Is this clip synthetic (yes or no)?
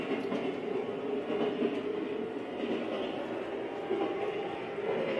no